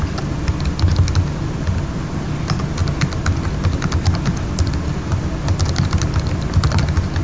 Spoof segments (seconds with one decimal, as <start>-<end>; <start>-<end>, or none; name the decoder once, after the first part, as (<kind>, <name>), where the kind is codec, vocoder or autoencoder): none